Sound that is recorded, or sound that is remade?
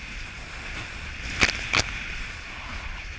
recorded